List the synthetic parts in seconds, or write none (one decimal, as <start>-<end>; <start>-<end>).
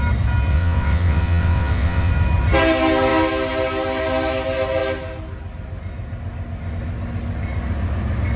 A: 0.5-2.1